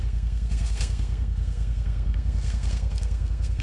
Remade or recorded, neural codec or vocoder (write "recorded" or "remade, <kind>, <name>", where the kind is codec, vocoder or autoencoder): remade, codec, SNAC